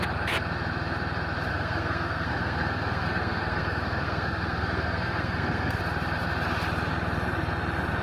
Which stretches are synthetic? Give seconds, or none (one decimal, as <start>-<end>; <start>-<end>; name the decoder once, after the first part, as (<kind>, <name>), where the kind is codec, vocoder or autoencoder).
1.5-5.8 (codec, SNAC)